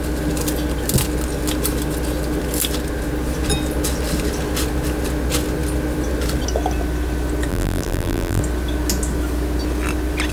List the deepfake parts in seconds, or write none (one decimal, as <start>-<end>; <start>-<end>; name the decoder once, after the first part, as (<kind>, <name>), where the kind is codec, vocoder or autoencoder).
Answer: 7.5-8.4 (vocoder, BigVGAN v2)